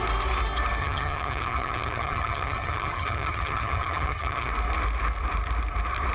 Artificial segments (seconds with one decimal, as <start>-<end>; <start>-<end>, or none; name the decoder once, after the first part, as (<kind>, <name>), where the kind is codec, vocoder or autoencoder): 0.8-4.5 (vocoder, HiFi-GAN)